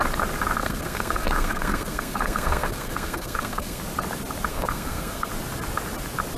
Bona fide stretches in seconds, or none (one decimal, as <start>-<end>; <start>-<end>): 0.0-0.6; 3.8-4.5; 5.3-6.4